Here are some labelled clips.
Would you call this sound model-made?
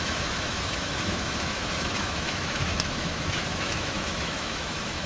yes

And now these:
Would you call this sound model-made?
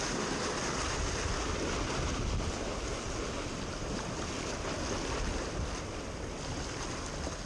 no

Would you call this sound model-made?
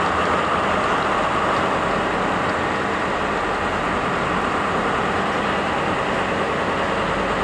no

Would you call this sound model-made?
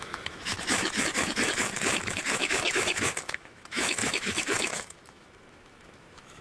yes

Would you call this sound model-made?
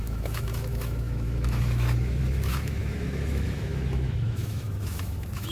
yes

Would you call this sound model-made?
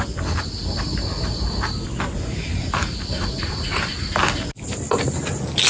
no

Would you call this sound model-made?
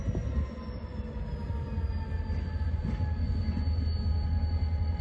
no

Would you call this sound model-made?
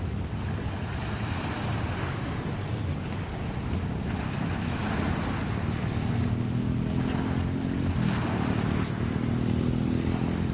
no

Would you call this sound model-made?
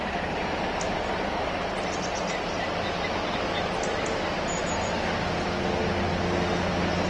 no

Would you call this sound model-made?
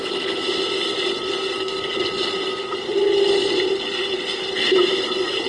no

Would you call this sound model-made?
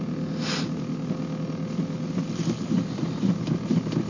no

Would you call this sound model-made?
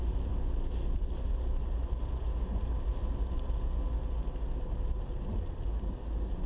no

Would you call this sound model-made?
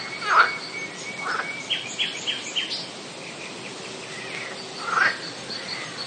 no